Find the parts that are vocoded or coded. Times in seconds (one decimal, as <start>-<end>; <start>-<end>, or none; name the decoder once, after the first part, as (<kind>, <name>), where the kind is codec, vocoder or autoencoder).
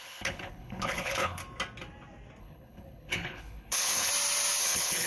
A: 0.0-1.4 (codec, HILCodec); 2.4-4.1; 4.6-5.1